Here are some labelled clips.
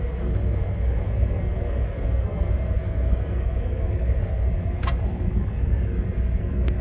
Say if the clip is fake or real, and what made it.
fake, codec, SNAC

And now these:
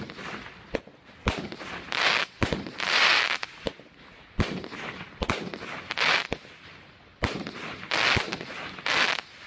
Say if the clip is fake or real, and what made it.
real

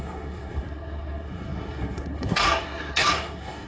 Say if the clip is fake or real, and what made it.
fake, codec, SNAC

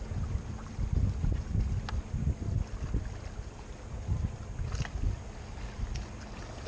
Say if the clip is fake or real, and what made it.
real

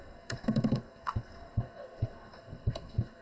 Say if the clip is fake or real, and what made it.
fake, codec, SNAC